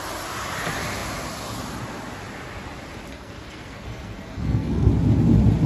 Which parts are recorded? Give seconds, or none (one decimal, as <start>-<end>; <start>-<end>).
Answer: 0.0-3.1; 4.9-5.7